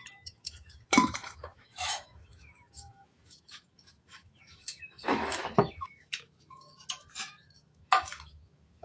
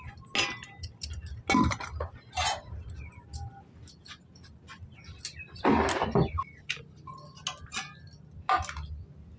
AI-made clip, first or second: first